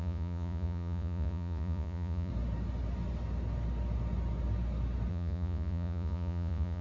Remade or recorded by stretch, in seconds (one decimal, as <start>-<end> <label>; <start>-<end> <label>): 0.0-2.3 remade; 2.3-5.1 recorded; 5.1-6.8 remade